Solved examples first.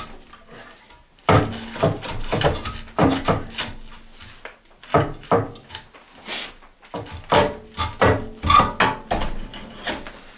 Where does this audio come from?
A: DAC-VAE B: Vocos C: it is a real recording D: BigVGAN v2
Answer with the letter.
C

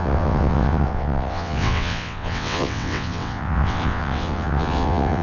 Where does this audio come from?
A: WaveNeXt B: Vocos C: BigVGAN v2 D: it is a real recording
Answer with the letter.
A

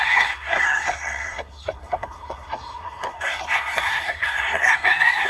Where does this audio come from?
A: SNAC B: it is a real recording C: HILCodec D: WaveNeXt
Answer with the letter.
A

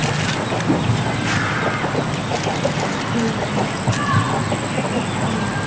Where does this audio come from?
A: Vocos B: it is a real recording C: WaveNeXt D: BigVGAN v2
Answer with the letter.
B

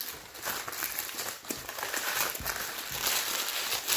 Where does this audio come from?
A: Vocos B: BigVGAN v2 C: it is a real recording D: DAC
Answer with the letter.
C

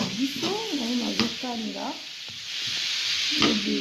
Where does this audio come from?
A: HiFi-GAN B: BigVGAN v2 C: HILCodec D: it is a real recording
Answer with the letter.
D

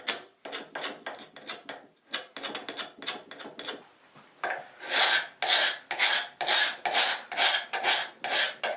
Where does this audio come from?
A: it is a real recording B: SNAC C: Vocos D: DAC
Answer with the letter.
A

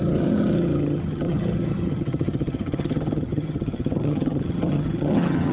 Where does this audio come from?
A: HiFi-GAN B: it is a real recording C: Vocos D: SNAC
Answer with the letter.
A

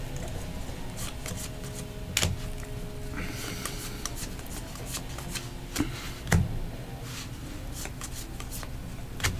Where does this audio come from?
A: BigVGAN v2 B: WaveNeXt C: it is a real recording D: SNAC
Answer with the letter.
C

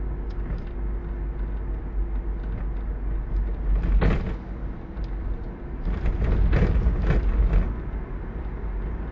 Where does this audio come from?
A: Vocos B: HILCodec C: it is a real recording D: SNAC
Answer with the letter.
C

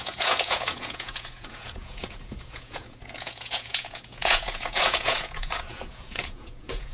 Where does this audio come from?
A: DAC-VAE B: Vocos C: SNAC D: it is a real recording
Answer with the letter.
B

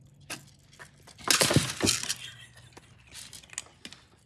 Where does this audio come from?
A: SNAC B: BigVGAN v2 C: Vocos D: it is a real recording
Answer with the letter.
D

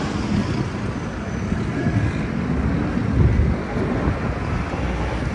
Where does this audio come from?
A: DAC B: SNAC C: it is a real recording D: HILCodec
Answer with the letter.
C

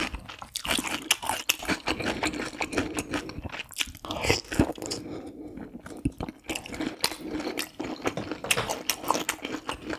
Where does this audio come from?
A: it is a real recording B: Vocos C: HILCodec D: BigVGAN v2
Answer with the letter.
A